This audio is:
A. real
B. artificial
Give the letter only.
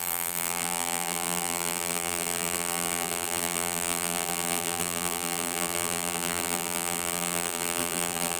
B